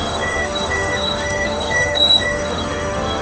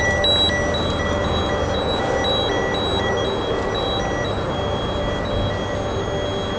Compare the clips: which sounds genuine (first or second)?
second